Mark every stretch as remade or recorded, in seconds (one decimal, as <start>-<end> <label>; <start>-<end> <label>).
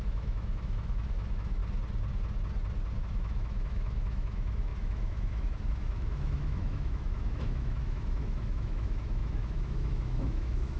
0.0-1.6 remade; 1.6-3.0 recorded; 3.0-10.8 remade